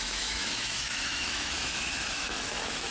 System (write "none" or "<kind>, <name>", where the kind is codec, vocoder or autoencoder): autoencoder, DAC-VAE